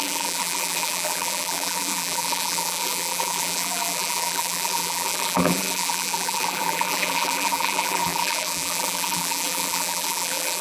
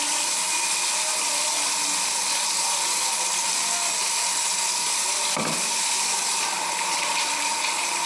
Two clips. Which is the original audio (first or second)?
second